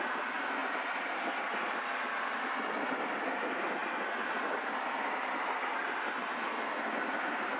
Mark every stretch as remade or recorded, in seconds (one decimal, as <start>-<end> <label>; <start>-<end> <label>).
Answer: 0.0-7.6 recorded